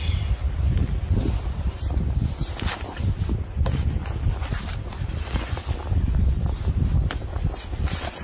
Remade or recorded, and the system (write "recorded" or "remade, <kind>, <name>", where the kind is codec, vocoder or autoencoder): recorded